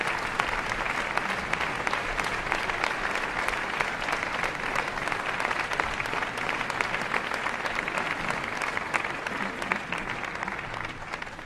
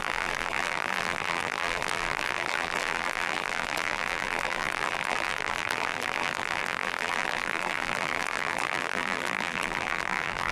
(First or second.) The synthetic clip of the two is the second